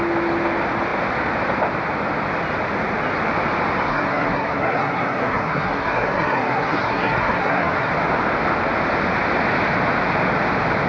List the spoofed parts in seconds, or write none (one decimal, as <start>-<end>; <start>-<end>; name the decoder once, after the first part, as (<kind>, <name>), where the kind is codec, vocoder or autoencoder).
3.9-7.9 (codec, SNAC)